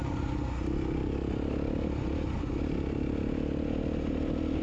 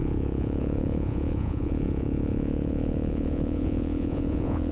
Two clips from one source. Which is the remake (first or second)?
second